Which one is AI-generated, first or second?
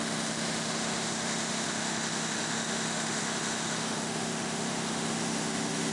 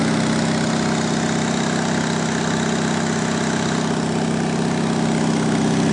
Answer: first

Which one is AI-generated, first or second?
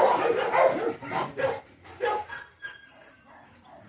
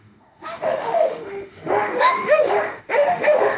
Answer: second